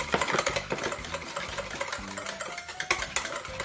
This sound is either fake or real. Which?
real